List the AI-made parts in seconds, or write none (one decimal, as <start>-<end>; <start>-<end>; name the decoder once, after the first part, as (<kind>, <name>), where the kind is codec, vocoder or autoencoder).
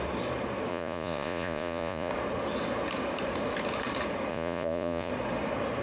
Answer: 0.7-2.1 (vocoder, Vocos); 4.3-5.1